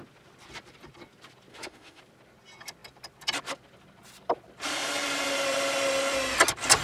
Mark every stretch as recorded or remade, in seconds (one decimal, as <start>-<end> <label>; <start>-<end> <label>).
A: 0.0-1.5 recorded; 1.5-2.0 remade; 2.0-6.8 recorded